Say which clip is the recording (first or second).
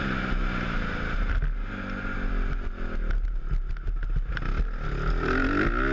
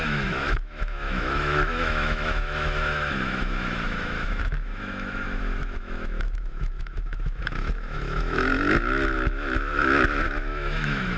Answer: first